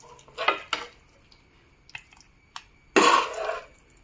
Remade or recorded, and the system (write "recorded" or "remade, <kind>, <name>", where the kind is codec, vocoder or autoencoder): recorded